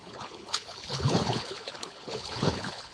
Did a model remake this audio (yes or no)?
yes